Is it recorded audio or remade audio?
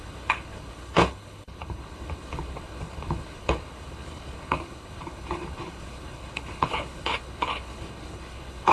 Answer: remade